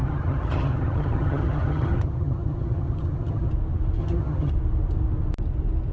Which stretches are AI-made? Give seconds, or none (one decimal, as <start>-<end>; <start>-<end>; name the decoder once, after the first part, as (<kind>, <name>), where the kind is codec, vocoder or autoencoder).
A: 0.0-3.5 (vocoder, HiFi-GAN); 4.0-4.5